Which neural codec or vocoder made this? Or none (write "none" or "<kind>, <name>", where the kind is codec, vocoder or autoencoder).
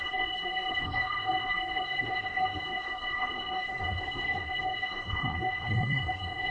codec, SNAC